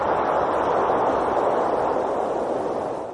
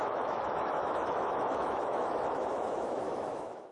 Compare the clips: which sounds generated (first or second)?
second